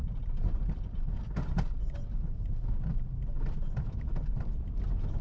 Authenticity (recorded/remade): recorded